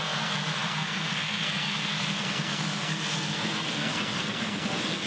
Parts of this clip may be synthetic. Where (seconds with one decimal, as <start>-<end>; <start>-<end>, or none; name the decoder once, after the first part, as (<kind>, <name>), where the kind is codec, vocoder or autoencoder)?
0.0-5.1 (codec, SNAC)